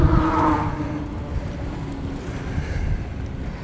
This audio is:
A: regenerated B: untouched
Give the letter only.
B